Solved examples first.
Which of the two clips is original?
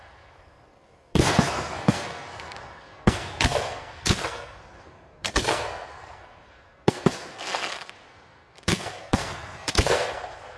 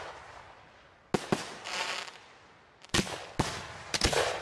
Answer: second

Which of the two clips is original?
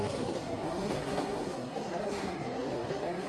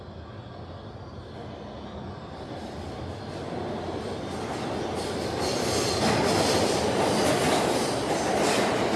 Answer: second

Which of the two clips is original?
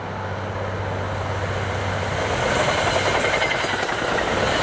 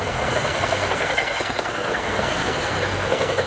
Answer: first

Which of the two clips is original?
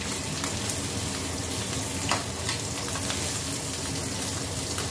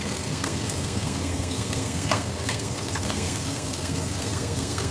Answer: first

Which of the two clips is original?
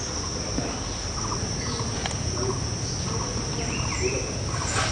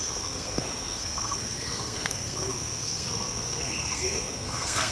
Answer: first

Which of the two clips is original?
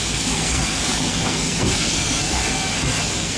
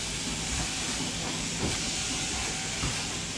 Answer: second